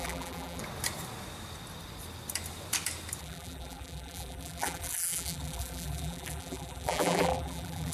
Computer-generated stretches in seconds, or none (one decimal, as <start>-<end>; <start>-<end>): 0.0-0.6; 3.2-7.9